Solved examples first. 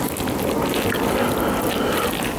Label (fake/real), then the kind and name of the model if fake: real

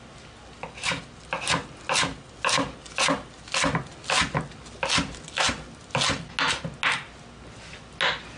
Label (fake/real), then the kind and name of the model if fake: real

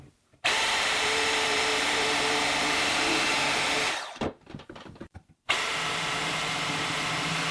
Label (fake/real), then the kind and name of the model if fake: fake, vocoder, BigVGAN v2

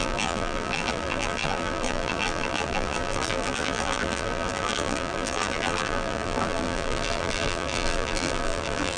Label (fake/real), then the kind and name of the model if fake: fake, vocoder, BigVGAN v2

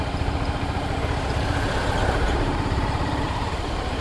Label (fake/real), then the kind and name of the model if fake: fake, vocoder, BigVGAN v2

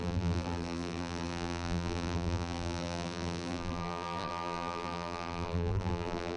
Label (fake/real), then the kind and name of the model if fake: fake, vocoder, BigVGAN v2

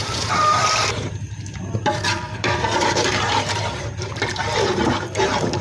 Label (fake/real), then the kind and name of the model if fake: fake, vocoder, BigVGAN v2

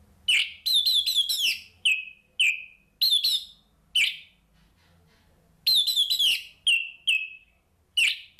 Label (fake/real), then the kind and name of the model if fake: real